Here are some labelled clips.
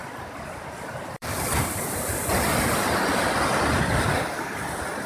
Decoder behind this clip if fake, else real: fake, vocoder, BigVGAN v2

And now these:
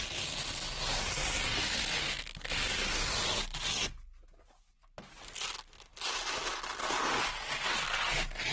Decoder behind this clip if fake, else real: real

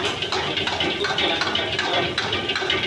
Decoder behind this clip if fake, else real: real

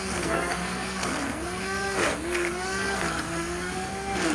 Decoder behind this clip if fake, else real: fake, codec, SNAC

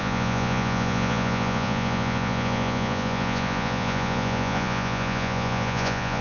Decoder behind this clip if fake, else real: fake, vocoder, Vocos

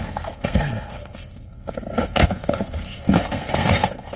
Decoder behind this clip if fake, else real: fake, codec, SNAC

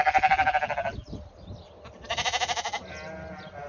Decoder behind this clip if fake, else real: real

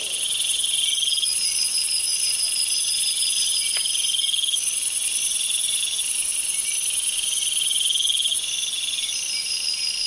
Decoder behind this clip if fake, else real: real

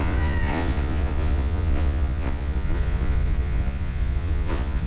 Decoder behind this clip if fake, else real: fake, vocoder, Vocos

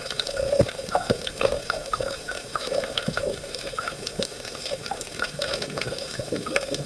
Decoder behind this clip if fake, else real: fake, autoencoder, DAC-VAE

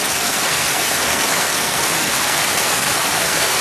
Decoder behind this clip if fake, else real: fake, codec, SNAC